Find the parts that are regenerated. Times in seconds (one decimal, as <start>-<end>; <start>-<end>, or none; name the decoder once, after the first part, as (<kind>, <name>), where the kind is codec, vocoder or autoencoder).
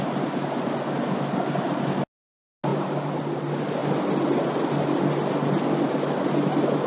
none